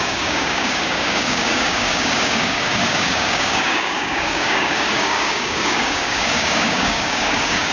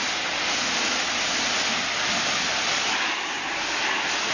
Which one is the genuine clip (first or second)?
second